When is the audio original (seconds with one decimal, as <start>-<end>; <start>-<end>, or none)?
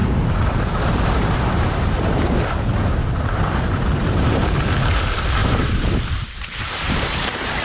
4.6-5.4